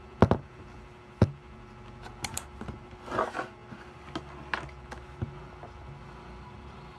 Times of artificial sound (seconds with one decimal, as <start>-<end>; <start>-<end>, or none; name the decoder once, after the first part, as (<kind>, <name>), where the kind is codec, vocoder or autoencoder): none